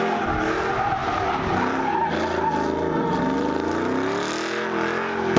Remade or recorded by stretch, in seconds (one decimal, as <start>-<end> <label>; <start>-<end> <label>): 0.0-5.4 recorded